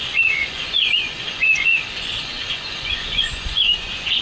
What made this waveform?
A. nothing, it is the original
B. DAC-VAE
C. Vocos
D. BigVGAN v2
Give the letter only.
C